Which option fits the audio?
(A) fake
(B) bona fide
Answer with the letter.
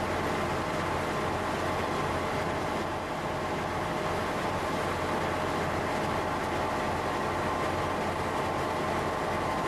B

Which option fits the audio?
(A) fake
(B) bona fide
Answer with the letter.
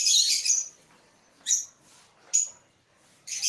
B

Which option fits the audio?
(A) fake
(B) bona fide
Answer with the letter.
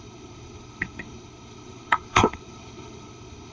A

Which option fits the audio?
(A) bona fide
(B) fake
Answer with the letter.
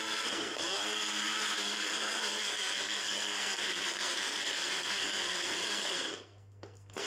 B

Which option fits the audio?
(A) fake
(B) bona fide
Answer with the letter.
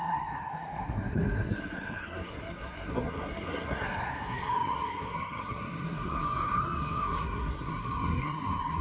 A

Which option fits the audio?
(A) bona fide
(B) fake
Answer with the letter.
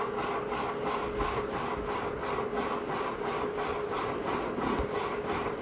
A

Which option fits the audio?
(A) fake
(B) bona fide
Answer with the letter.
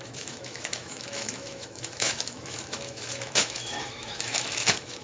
A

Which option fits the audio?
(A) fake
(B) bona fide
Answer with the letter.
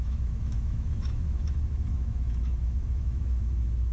A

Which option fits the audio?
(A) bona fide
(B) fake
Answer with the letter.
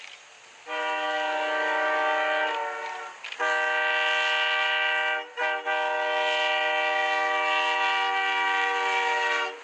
A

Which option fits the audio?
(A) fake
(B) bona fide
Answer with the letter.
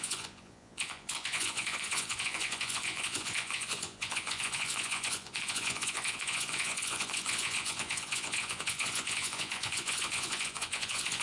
A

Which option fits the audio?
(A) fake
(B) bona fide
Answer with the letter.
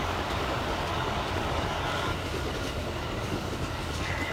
A